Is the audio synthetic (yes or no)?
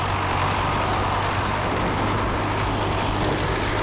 no